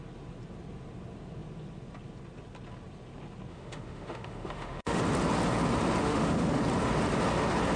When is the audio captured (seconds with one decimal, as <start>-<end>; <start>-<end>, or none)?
0.0-3.5; 5.0-6.0; 6.6-7.8